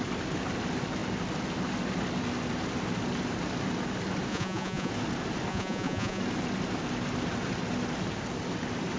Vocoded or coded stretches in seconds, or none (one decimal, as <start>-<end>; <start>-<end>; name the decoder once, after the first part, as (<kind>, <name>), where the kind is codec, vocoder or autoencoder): 4.3-4.9 (vocoder, Vocos); 5.5-6.2